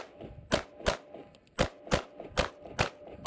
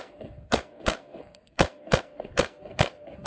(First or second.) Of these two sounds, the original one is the first